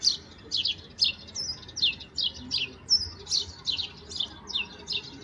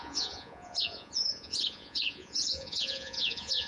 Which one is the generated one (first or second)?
second